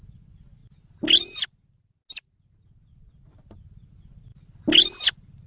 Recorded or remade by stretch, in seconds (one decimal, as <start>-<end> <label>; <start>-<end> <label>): 0.0-5.5 recorded